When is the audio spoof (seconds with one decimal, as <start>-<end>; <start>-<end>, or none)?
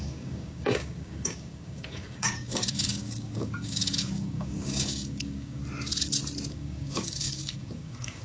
0.0-5.6; 6.5-8.2